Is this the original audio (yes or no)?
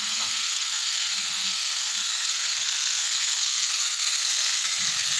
no